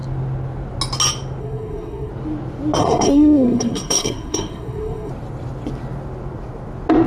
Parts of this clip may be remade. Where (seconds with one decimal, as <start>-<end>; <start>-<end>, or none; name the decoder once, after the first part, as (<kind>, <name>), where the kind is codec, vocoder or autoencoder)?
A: 1.4-2.1 (codec, SNAC); 2.8-5.1